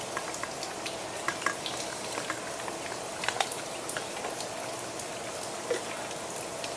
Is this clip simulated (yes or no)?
no